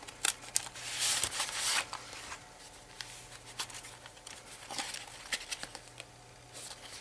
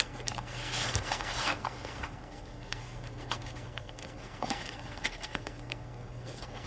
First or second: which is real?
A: first